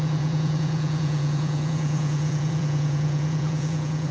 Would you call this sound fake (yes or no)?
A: yes